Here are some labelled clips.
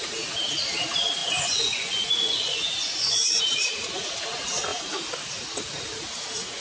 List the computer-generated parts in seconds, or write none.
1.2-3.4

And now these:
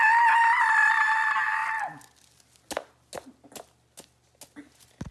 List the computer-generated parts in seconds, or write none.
none